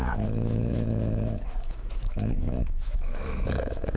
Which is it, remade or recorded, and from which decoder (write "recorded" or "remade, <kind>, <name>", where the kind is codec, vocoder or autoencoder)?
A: remade, autoencoder, DAC-VAE